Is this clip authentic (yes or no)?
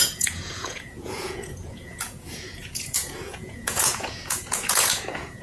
no